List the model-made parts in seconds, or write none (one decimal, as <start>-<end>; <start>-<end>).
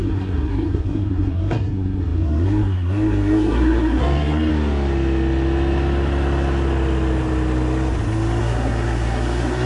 0.0-4.5; 8.4-9.7